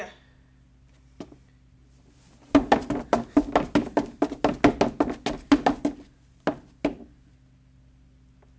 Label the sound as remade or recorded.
recorded